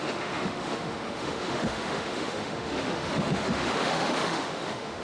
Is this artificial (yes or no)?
yes